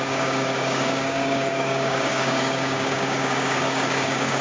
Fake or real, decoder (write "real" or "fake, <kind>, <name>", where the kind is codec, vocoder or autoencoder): fake, codec, DAC